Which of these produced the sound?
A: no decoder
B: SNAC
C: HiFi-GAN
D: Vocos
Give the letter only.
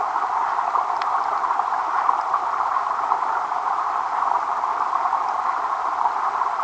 A